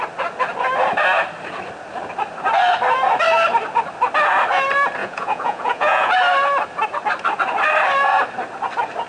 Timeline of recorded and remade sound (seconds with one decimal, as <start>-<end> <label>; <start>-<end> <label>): 0.0-5.0 recorded; 5.0-6.1 remade; 6.1-9.1 recorded